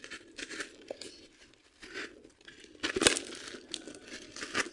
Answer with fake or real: real